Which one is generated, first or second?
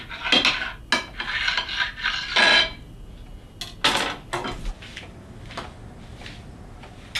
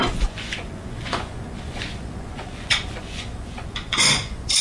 second